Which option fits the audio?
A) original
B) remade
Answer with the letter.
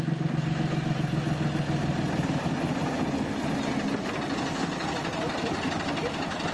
A